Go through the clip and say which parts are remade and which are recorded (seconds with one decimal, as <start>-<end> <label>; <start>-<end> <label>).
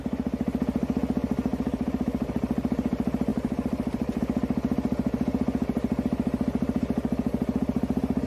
0.0-1.5 recorded; 1.5-2.3 remade; 2.3-3.3 recorded; 3.3-4.2 remade; 4.2-8.3 recorded